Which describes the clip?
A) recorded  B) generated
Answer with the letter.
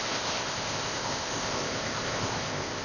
B